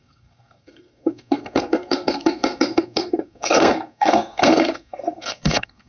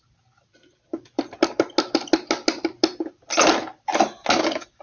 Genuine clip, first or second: second